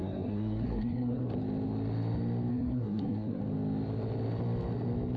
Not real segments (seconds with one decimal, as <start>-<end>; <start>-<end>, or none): 0.0-1.2; 2.5-3.4